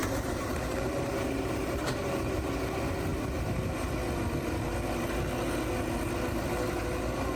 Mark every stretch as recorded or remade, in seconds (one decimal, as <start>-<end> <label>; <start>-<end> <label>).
0.0-2.5 remade; 2.5-7.4 recorded

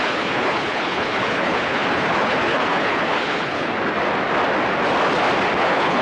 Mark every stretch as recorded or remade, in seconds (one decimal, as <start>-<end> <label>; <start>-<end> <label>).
0.0-3.7 remade; 3.7-5.6 recorded; 5.6-6.0 remade

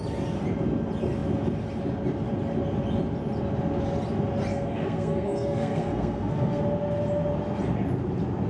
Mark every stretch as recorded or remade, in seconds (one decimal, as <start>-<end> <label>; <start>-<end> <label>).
0.0-4.5 recorded; 4.5-6.6 remade; 6.6-8.5 recorded

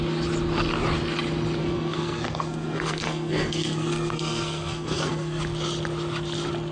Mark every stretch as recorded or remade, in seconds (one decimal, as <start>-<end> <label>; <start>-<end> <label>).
0.0-1.6 recorded; 1.6-5.4 remade; 5.4-6.7 recorded

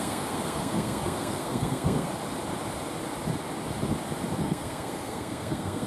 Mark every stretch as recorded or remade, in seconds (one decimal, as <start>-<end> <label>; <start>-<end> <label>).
0.0-2.1 remade; 2.1-4.4 recorded; 4.4-5.9 remade